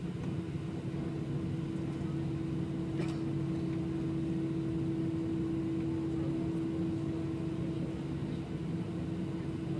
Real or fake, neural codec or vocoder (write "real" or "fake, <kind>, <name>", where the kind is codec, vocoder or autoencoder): real